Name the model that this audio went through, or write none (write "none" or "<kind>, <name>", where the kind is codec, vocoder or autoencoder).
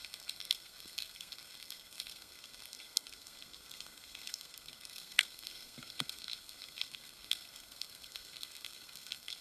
codec, SNAC